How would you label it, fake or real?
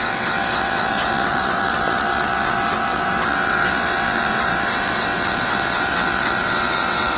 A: fake